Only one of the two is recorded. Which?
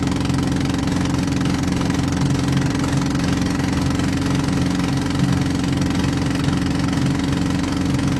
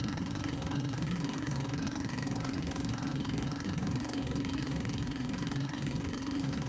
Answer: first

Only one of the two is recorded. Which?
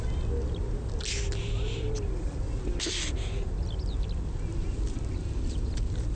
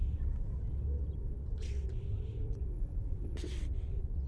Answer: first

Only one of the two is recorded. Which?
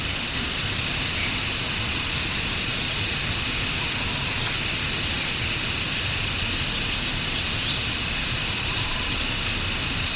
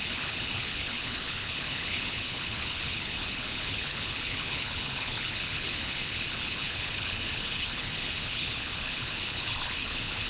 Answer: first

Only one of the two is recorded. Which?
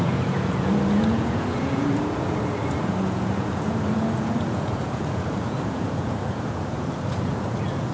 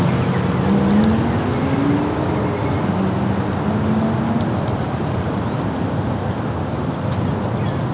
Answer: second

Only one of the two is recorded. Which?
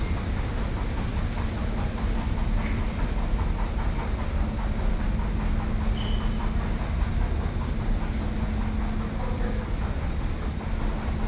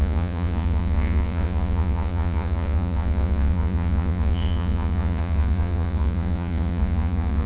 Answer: first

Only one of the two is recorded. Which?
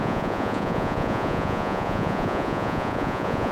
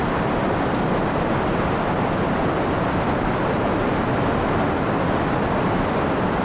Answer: second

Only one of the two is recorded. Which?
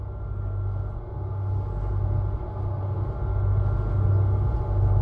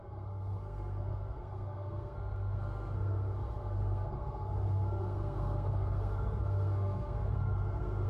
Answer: first